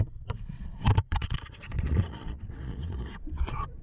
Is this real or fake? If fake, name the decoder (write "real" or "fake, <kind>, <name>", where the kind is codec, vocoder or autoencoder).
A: fake, vocoder, Vocos